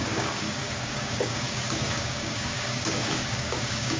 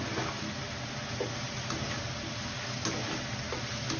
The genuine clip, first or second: second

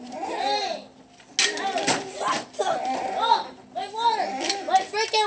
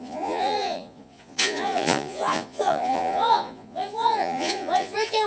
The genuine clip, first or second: first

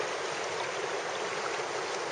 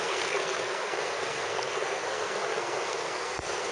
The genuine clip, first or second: first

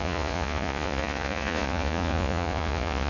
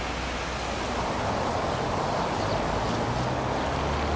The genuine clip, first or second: second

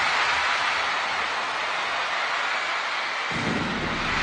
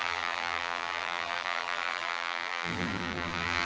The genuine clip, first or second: first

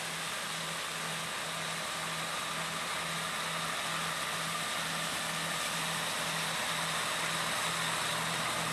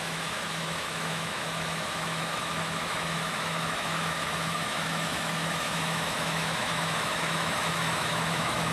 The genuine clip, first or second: first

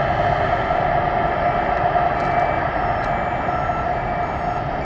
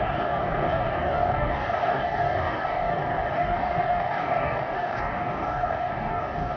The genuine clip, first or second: first